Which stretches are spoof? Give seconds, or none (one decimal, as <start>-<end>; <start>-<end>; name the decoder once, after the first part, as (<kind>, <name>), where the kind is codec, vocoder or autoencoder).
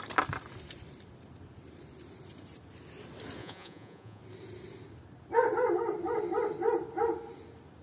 3.4-4.2 (vocoder, Vocos)